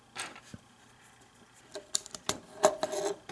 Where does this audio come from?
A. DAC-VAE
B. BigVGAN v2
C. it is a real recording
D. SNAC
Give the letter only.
C